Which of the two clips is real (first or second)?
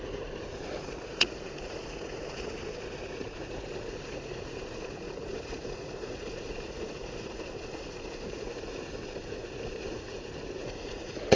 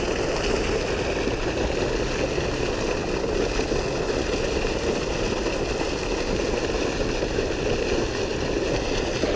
second